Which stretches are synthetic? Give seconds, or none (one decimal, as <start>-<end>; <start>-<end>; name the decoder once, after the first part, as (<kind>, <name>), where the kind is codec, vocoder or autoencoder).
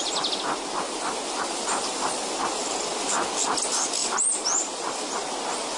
4.0-5.1 (vocoder, BigVGAN v2)